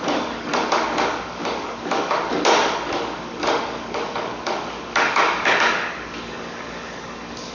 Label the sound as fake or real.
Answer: fake